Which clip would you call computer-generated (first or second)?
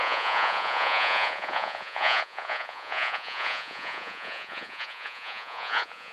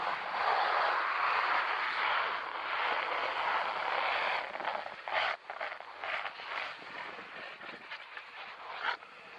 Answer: first